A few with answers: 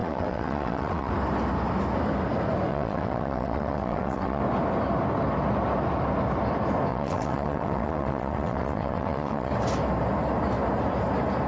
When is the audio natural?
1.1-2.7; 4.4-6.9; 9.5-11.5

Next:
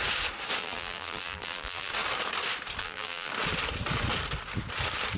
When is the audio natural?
0.0-0.6; 1.9-2.8; 3.3-5.2

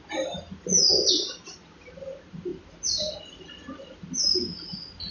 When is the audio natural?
0.0-5.1

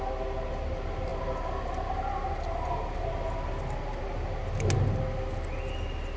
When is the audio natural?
0.0-6.2

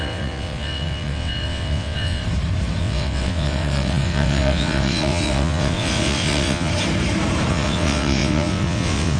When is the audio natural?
2.2-2.8; 6.7-7.5

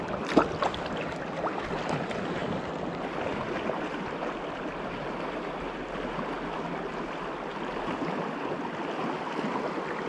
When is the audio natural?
0.0-10.1

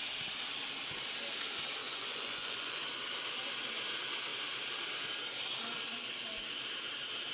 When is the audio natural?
0.0-1.8; 2.9-7.3